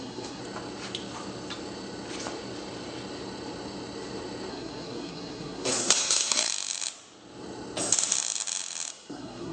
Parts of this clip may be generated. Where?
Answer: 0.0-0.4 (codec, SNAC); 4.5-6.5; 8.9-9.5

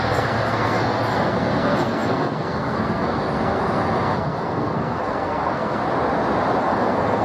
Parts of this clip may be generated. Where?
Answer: 0.0-5.8 (codec, SNAC); 6.6-7.2

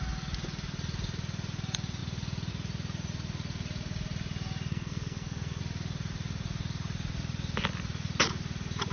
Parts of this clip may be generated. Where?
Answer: 4.7-5.6 (codec, SNAC)

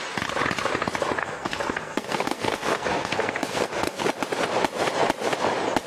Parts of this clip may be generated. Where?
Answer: 1.2-4.1 (codec, SNAC)